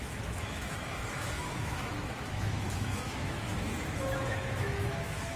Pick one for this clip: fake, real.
fake